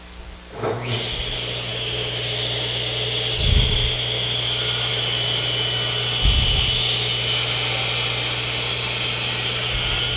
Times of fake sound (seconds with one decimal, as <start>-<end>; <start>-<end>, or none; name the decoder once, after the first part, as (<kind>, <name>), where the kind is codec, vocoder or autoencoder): none